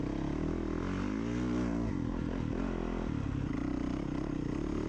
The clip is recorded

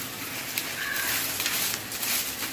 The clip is recorded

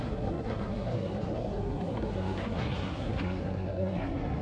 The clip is remade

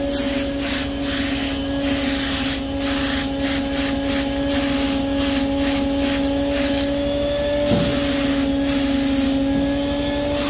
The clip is recorded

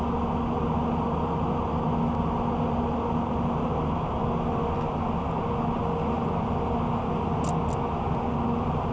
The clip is recorded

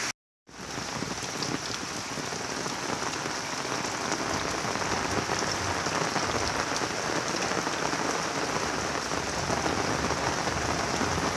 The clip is recorded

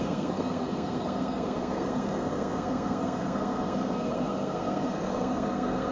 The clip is remade